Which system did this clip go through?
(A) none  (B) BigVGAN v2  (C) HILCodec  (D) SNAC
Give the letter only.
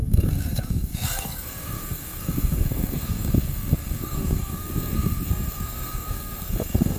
D